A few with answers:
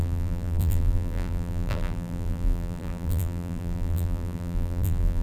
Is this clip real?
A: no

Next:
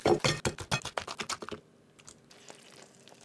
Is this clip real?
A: yes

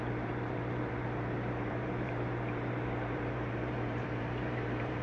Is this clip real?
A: no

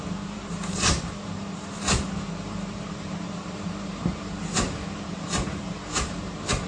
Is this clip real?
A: no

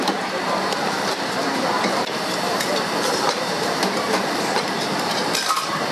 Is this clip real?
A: no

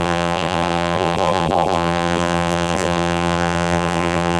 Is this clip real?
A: no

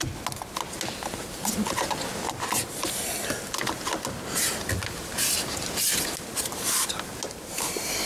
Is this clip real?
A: yes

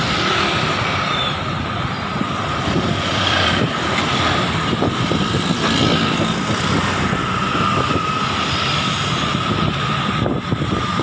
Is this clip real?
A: no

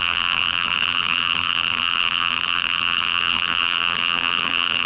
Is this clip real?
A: no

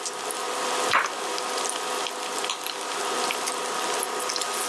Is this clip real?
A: yes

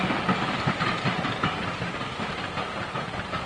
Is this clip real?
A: yes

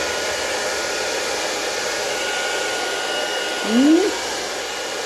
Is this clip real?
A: yes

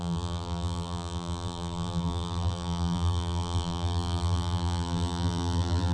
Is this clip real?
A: no